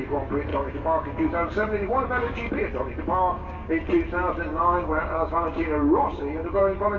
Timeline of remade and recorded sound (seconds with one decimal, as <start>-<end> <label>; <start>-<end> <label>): 0.0-0.5 recorded; 0.5-2.5 remade; 2.5-3.2 recorded; 3.2-3.8 remade; 3.8-4.5 recorded; 4.5-6.6 remade; 6.6-7.0 recorded